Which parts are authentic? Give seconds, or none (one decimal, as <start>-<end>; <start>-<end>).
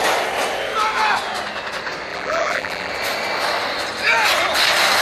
0.0-2.1; 2.9-5.0